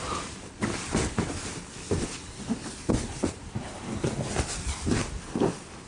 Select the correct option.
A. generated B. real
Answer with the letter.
B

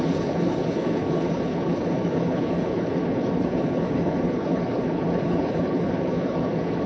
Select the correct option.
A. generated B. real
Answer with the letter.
A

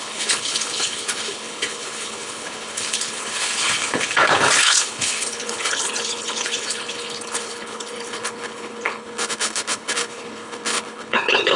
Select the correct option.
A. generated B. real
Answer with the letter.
A